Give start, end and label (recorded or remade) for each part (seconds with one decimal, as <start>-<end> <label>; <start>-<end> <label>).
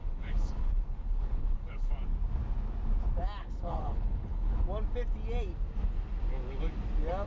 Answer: 0.0-1.9 remade; 1.9-3.4 recorded; 3.4-4.5 remade; 4.5-7.3 recorded